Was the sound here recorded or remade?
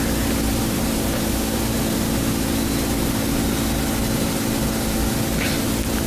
recorded